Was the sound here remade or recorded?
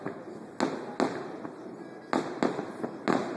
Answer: recorded